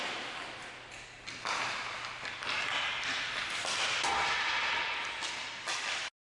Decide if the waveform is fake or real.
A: real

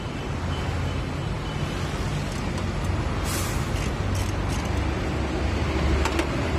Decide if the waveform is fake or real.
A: real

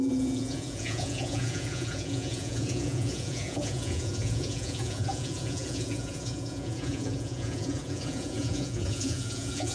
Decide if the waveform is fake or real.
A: fake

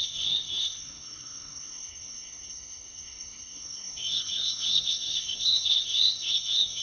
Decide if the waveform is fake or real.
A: fake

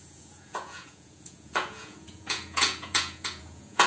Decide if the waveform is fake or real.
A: fake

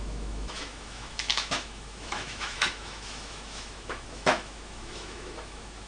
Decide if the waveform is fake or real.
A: fake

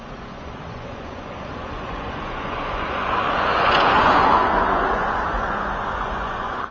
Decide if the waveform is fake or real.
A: fake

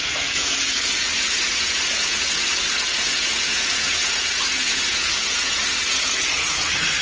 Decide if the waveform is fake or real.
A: fake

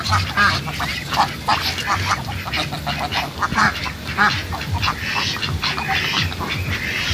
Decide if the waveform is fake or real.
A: real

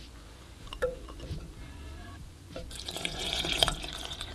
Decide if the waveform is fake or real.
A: fake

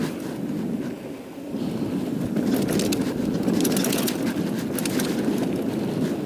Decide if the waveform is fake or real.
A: real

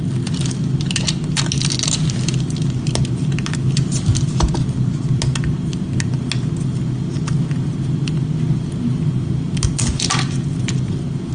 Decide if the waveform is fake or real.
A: real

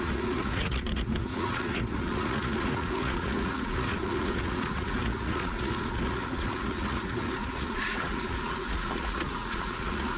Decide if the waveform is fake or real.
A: fake